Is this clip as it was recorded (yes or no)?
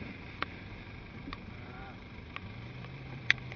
no